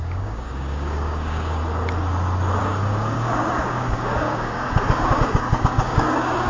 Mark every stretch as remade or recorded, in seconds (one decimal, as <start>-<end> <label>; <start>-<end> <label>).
0.0-1.6 remade; 1.6-2.6 recorded; 2.6-6.5 remade